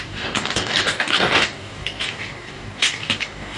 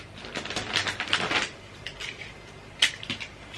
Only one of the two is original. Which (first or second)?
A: second